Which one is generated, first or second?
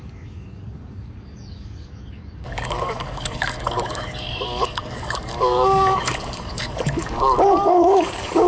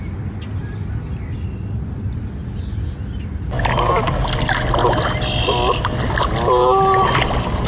first